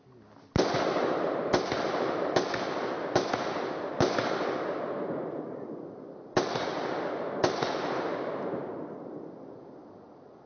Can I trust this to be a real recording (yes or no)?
yes